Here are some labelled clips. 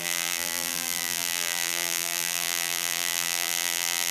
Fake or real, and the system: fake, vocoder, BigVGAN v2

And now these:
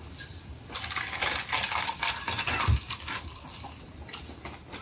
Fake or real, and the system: real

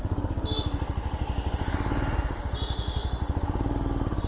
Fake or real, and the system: real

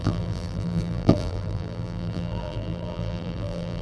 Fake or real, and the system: fake, vocoder, BigVGAN v2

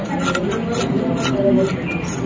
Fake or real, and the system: real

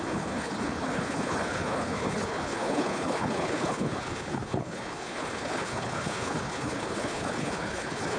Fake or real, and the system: fake, codec, HILCodec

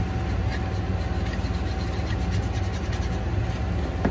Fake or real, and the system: real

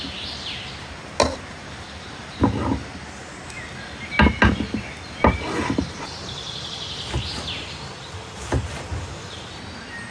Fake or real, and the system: real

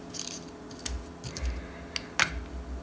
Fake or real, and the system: real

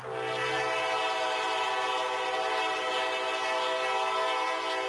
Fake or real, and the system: real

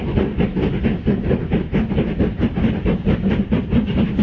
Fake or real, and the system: real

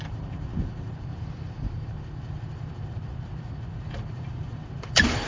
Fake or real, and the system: fake, vocoder, BigVGAN v2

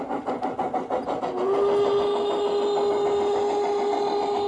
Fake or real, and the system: real